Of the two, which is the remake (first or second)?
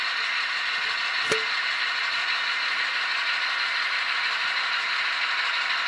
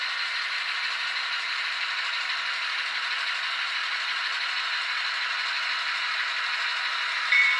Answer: second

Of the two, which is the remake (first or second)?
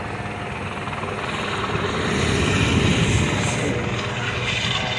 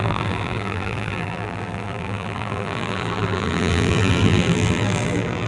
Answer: second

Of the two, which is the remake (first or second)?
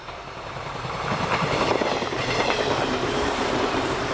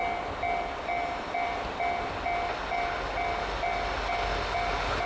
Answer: first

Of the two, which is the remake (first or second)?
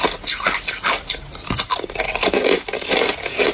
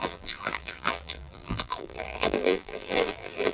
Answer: second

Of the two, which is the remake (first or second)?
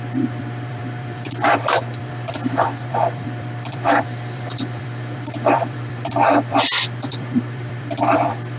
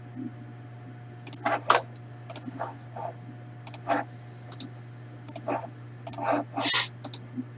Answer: first